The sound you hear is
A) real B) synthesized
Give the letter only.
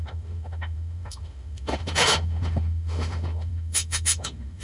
B